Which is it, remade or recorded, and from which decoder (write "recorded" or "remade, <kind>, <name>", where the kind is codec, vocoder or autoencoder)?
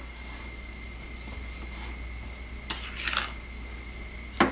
recorded